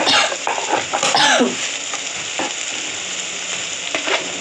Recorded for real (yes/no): yes